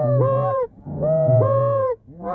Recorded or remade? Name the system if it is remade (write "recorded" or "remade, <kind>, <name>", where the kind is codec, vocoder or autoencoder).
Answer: remade, vocoder, Vocos